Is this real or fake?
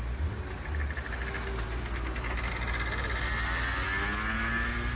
real